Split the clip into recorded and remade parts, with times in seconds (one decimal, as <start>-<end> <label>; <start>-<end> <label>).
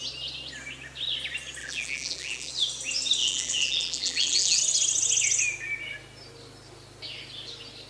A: 0.0-1.6 recorded; 1.6-2.5 remade; 2.5-3.2 recorded; 3.2-4.6 remade; 4.6-7.9 recorded